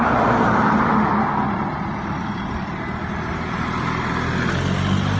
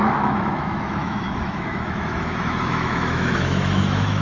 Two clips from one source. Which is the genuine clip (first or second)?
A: first